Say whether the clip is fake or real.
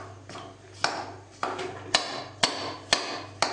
real